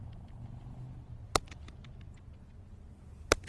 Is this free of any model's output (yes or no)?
yes